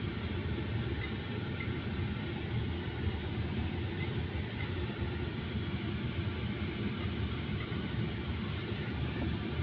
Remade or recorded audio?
recorded